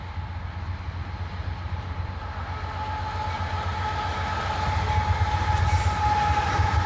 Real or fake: real